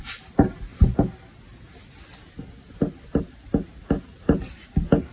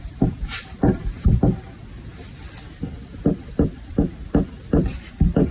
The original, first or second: first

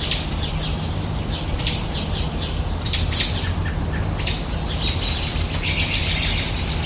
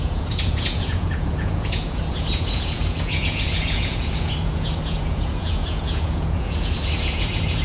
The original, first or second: first